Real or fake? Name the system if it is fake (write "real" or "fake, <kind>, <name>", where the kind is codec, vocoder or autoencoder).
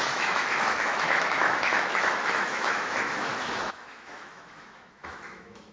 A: fake, autoencoder, DAC-VAE